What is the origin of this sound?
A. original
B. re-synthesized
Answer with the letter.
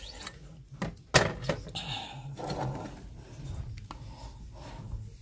A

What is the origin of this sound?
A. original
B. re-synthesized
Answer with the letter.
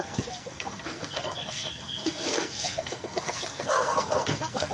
B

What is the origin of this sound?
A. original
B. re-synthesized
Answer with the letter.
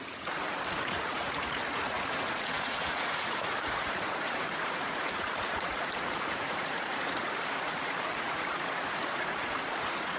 B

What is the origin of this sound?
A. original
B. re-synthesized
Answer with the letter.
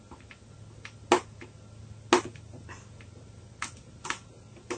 A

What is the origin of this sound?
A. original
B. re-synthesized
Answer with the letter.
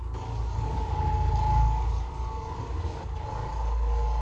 B